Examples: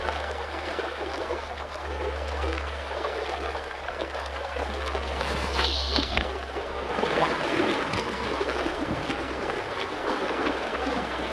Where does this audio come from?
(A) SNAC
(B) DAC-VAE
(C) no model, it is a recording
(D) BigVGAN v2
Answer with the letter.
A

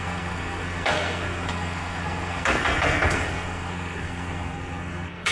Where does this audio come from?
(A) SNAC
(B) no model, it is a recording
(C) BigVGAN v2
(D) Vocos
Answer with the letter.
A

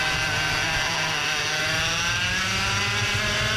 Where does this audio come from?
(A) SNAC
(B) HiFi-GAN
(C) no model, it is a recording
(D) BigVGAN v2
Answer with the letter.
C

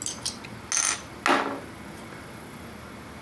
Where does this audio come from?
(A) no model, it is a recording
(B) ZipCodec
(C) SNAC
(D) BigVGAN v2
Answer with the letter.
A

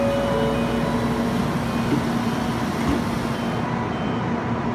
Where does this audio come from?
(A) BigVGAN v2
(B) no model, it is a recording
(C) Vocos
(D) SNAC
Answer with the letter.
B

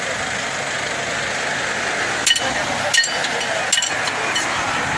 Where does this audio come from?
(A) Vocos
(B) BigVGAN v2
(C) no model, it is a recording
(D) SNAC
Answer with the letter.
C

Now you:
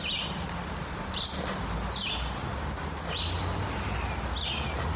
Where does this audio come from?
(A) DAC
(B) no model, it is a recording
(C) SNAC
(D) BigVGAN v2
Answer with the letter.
B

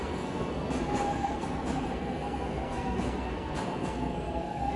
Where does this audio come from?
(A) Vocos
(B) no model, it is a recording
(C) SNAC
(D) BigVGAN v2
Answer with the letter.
C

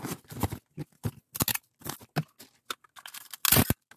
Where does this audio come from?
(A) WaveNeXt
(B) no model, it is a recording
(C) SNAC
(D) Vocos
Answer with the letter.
B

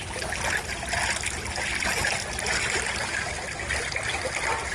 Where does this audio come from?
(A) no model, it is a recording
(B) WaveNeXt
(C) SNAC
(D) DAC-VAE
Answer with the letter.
A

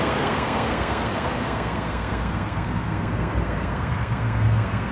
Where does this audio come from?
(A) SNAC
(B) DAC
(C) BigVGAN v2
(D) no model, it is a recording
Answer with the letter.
A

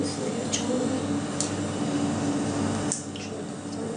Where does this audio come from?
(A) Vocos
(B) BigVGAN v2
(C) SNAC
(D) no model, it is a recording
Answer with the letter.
D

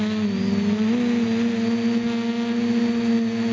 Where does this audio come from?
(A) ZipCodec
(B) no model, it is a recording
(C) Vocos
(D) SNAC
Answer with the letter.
B